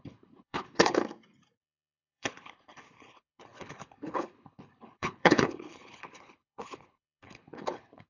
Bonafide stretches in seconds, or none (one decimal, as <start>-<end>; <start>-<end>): 1.0-1.6